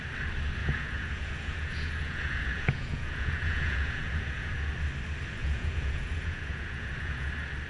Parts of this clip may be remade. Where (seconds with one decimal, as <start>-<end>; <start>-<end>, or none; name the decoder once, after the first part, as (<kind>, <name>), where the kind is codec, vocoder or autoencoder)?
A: 0.6-4.7 (vocoder, Vocos); 5.4-7.3